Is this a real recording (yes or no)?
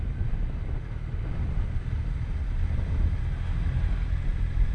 yes